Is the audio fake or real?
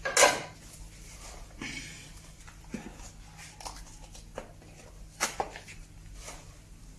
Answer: real